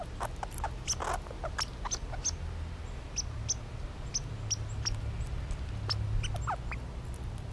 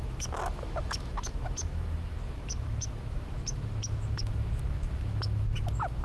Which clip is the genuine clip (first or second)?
first